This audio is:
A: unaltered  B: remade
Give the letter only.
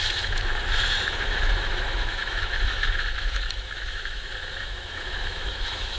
B